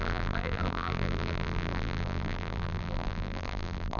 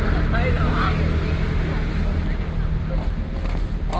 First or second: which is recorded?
second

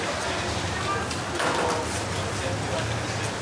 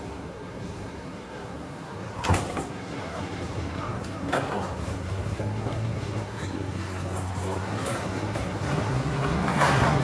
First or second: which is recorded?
first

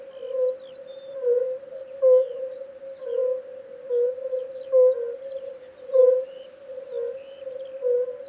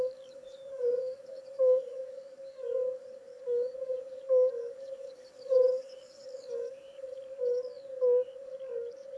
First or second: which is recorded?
first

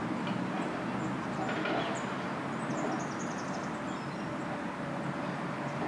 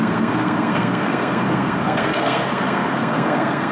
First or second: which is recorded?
first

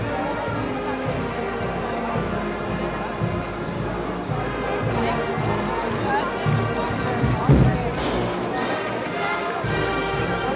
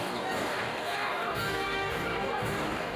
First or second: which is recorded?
first